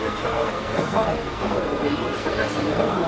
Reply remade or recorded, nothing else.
remade